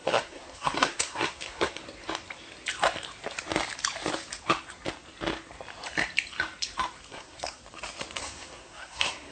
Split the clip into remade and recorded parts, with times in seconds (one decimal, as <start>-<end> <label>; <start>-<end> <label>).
0.0-1.8 remade; 1.8-7.1 recorded; 7.1-7.6 remade; 7.6-8.2 recorded; 8.2-9.3 remade